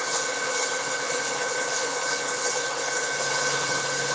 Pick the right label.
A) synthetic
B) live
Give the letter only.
A